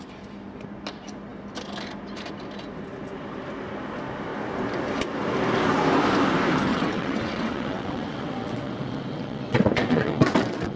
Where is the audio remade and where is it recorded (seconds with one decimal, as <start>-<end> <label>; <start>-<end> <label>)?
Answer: 0.0-6.7 recorded; 6.7-10.8 remade